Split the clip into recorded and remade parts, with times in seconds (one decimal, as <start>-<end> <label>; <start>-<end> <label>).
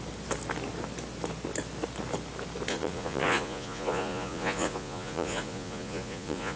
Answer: 0.0-2.7 recorded; 2.7-6.6 remade